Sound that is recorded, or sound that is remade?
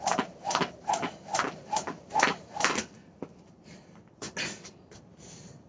recorded